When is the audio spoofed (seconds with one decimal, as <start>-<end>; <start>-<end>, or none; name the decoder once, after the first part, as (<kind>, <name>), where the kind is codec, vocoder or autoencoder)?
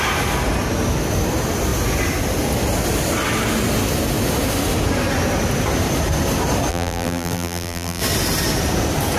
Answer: 6.7-8.0 (vocoder, BigVGAN v2)